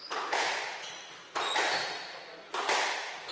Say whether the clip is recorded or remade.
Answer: recorded